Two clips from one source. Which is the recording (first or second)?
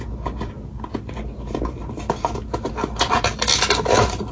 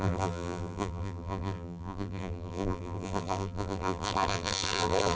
first